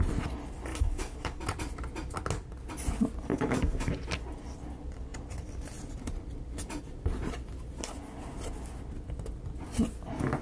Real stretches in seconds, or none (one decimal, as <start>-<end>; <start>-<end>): 0.0-0.7; 1.4-3.3; 3.9-10.4